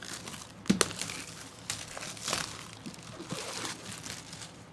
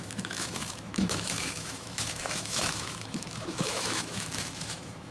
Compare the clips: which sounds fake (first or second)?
second